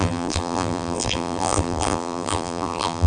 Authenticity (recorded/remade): remade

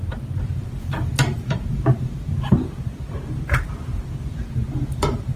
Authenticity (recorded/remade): remade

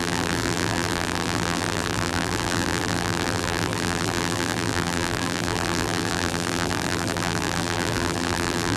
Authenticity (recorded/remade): remade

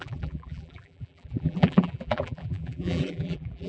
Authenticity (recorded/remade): remade